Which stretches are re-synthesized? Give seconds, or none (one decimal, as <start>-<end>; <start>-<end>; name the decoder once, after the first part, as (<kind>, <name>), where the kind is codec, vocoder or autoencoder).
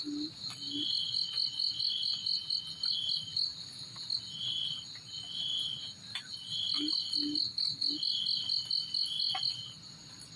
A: none